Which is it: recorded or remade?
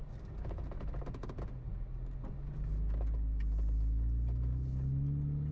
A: recorded